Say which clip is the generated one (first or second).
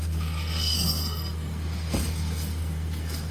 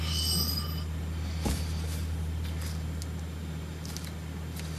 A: first